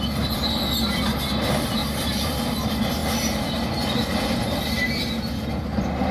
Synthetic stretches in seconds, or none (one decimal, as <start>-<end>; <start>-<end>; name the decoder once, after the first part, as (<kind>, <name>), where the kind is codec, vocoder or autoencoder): 1.8-2.4 (vocoder, BigVGAN v2)